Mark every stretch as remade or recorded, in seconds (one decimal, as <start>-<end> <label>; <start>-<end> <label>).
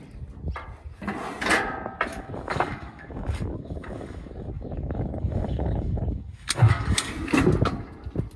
0.0-2.1 recorded; 2.1-7.1 remade; 7.1-8.4 recorded